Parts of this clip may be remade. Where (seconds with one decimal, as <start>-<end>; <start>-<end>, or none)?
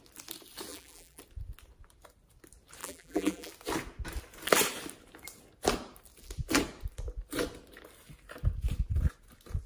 0.7-1.2; 2.8-3.5